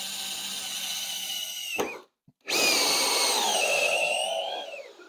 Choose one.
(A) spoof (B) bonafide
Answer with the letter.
B